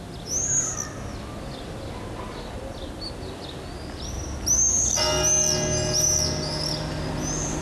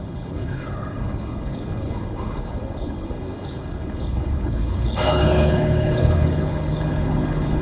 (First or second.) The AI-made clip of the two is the second